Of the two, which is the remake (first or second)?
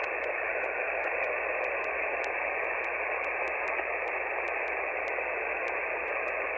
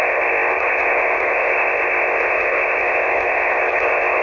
second